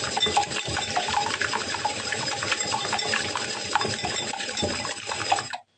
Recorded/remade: remade